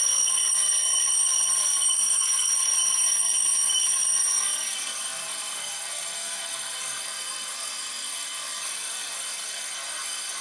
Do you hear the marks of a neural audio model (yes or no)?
yes